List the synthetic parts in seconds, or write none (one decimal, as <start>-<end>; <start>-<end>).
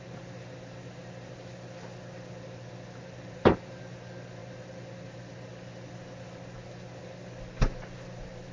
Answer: none